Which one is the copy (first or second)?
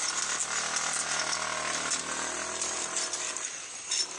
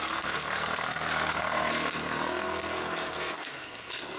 second